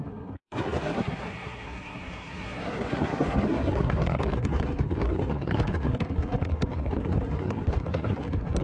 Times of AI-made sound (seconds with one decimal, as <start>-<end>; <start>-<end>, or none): 0.0-8.6